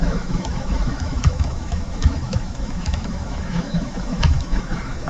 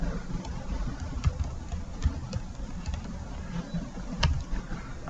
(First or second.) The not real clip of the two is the first